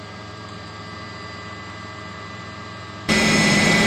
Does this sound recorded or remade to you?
remade